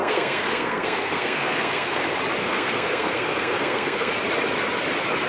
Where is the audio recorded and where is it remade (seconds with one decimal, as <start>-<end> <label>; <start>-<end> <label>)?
0.0-2.0 remade; 2.0-2.4 recorded; 2.4-4.1 remade; 4.1-5.3 recorded